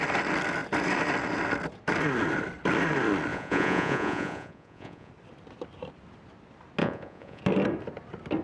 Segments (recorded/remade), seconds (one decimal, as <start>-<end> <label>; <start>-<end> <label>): 0.0-3.3 recorded; 3.3-5.1 remade; 5.1-6.8 recorded; 6.8-7.4 remade; 7.4-8.4 recorded